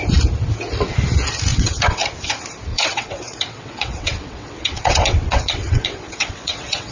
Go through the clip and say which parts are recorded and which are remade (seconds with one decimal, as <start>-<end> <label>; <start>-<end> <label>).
0.0-1.5 recorded; 1.5-2.0 remade; 2.0-2.7 recorded; 2.7-6.9 remade